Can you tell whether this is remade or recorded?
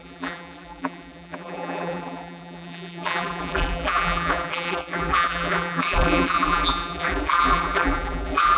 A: remade